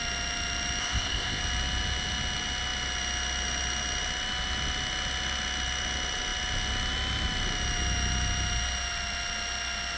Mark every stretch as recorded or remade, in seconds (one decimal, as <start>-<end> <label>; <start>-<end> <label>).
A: 0.0-0.8 recorded; 0.8-1.4 remade; 1.4-10.0 recorded